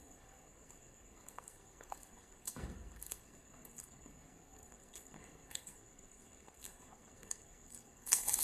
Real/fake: fake